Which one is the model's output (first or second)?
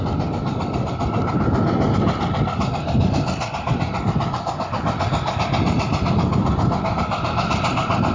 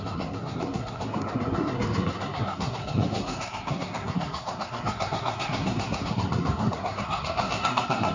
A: second